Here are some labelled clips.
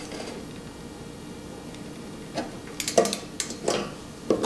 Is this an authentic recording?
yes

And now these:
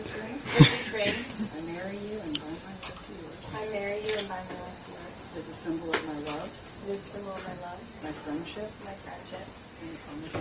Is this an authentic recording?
yes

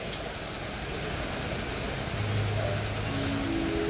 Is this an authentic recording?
yes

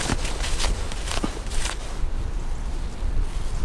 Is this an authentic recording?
yes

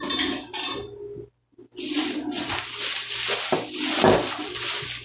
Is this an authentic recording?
yes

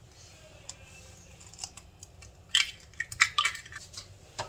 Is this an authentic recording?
yes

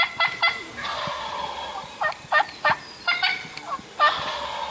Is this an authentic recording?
yes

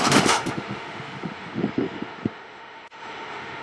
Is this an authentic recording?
no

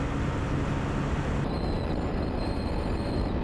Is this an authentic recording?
yes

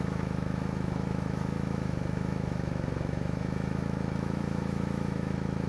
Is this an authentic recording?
no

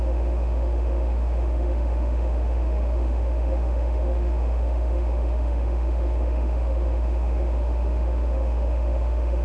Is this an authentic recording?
no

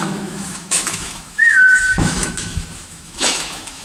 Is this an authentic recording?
no